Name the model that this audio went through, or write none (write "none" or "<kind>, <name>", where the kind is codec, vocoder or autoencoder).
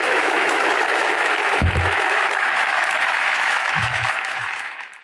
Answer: autoencoder, DAC-VAE